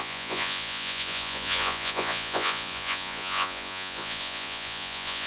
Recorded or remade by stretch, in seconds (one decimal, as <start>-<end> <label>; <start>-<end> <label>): 0.0-5.3 remade